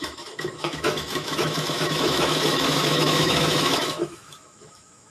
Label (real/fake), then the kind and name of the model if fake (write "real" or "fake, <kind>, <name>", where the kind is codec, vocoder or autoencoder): fake, autoencoder, DAC-VAE